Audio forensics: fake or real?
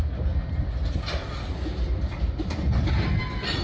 real